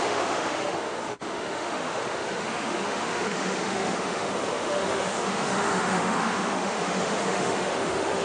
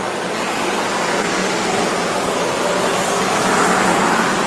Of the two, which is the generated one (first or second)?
first